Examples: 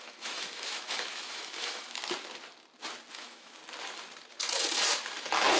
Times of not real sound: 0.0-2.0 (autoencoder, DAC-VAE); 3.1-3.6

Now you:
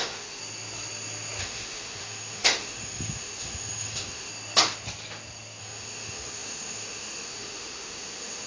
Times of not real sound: 0.0-0.4 (autoencoder, DAC-VAE); 1.4-4.3; 5.6-8.5

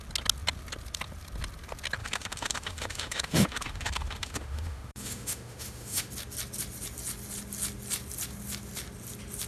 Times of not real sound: 2.0-6.1 (autoencoder, DAC-VAE)

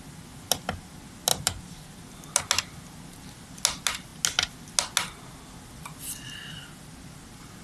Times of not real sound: none

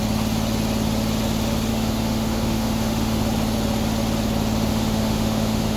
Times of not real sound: 1.7-3.2 (autoencoder, DAC-VAE); 4.7-5.8